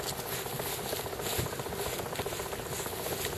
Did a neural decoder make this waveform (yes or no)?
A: no